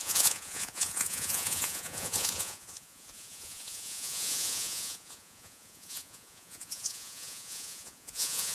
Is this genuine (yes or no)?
no